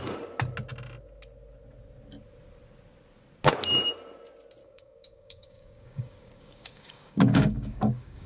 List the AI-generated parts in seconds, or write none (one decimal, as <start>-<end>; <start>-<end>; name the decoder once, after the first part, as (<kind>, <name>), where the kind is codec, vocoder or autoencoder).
4.6-8.3 (codec, DAC)